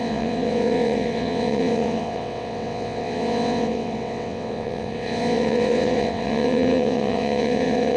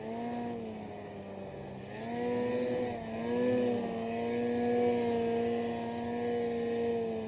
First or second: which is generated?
first